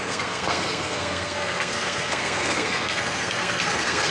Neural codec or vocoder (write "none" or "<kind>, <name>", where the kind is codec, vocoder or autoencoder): codec, SNAC